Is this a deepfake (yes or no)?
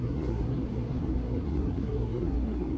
yes